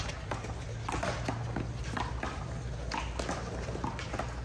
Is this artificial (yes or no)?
no